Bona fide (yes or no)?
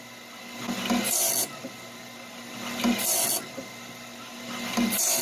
yes